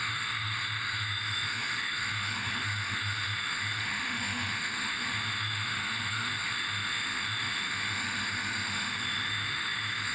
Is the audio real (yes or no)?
no